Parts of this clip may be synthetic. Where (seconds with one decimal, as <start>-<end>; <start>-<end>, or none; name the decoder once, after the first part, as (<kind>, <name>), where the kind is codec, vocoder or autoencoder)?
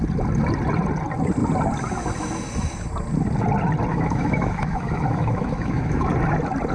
3.9-6.1 (autoencoder, DAC-VAE)